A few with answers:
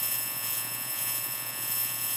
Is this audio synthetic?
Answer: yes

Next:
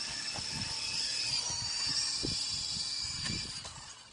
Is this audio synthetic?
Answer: no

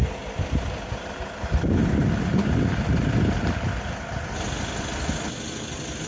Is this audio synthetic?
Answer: no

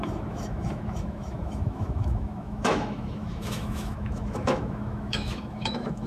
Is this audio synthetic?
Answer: yes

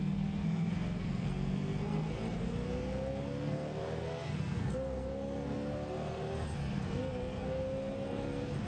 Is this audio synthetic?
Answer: yes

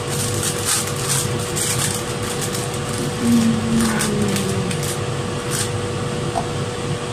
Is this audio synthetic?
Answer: no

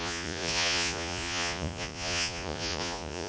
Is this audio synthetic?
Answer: yes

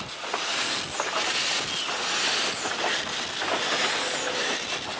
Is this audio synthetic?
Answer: no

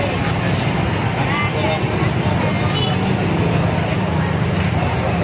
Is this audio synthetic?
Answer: no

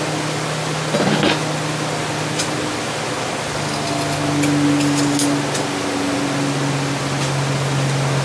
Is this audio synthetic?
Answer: no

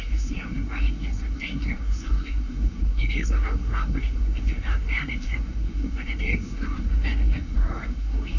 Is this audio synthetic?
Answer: yes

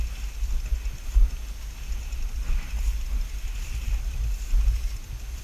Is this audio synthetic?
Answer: no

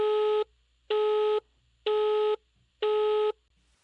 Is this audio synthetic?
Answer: no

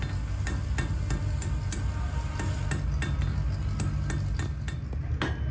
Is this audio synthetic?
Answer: no